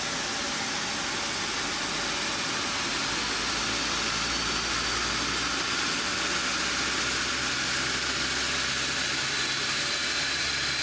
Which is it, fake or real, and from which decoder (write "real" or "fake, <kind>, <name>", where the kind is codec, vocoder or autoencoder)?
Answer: real